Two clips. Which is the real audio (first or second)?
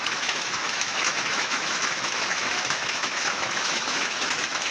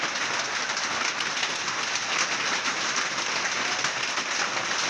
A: second